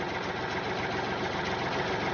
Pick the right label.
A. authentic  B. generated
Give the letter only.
A